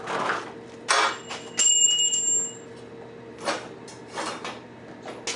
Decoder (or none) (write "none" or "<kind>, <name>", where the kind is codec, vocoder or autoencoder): none